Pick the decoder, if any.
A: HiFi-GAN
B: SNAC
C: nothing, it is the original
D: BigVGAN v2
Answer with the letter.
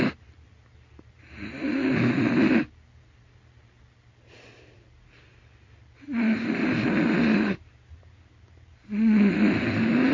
C